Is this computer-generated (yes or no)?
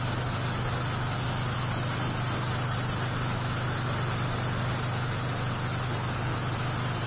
no